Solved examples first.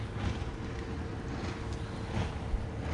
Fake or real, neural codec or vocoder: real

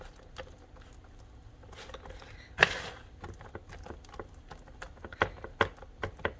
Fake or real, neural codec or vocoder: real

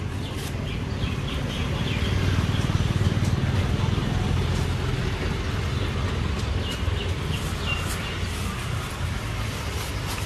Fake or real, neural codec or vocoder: real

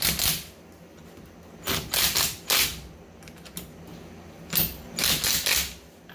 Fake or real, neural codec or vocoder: real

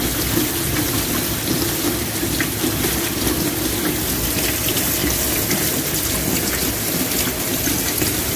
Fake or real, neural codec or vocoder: real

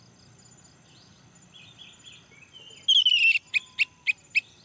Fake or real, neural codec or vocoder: real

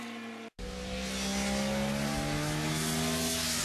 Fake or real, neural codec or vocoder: real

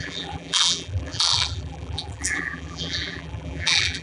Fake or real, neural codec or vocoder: fake, vocoder, BigVGAN v2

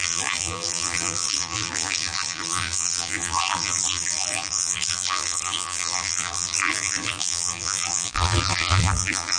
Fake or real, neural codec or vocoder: fake, vocoder, BigVGAN v2